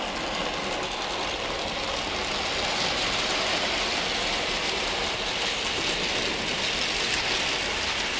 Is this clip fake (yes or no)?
no